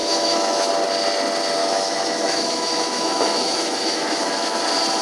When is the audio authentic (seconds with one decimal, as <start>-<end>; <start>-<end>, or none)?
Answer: 0.7-1.6; 4.6-5.0